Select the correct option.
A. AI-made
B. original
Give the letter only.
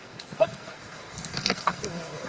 A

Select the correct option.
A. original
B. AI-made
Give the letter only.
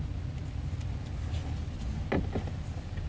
A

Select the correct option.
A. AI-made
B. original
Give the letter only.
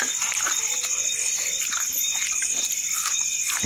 B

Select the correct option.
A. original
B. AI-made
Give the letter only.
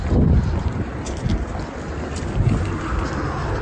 A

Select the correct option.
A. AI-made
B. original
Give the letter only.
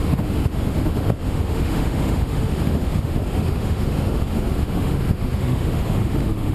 A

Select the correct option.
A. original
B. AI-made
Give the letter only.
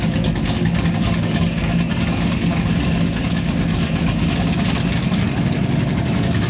B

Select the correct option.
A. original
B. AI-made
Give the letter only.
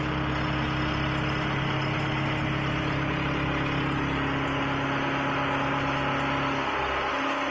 A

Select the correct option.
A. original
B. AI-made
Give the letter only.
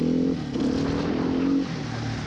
A